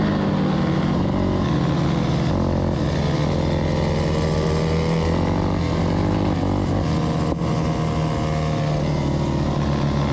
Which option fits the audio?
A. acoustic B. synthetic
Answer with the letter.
A